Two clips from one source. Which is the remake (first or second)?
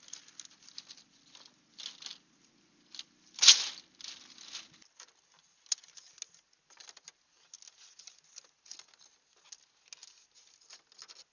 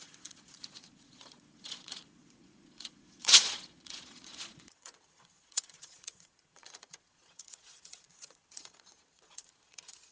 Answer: second